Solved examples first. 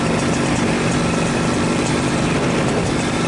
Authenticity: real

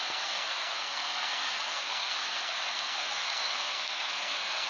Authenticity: fake